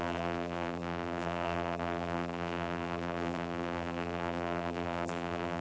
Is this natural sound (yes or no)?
no